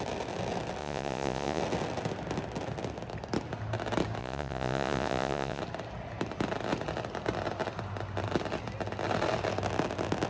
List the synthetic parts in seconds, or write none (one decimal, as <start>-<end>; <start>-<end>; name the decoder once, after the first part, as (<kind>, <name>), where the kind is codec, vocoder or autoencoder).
0.8-1.6 (vocoder, Vocos); 4.2-5.6